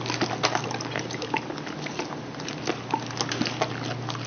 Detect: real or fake real